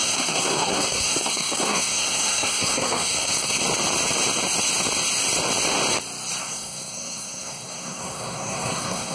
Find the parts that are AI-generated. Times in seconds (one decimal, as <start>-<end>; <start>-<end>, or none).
0.0-3.6; 6.4-9.1